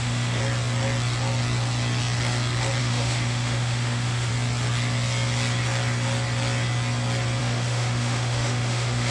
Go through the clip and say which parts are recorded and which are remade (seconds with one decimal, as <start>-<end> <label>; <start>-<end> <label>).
0.0-0.4 remade; 0.4-2.8 recorded; 2.8-4.3 remade; 4.3-7.4 recorded; 7.4-9.1 remade